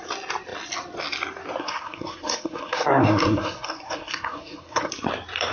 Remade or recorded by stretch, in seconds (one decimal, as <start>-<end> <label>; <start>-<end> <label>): 0.0-1.6 recorded; 1.6-4.9 remade; 4.9-5.5 recorded